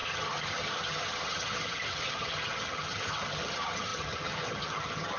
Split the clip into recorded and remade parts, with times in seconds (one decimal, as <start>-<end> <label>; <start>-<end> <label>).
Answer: 0.0-5.2 remade